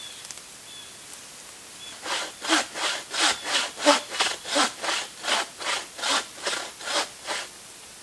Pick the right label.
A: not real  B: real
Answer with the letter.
B